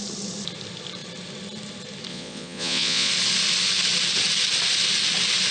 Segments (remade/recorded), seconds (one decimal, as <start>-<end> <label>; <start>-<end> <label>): 0.0-2.1 recorded; 2.1-3.1 remade; 3.1-5.5 recorded